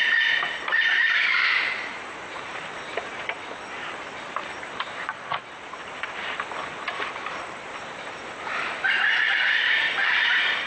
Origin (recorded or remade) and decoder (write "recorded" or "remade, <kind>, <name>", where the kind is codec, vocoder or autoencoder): remade, vocoder, BigVGAN v2